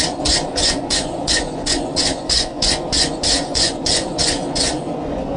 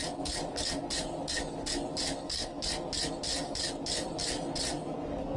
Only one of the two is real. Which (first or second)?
second